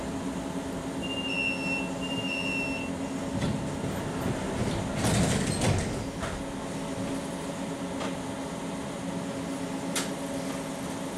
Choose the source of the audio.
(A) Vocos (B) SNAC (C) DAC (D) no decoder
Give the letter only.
D